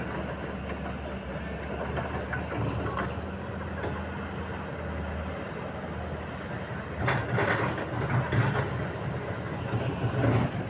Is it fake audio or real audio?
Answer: real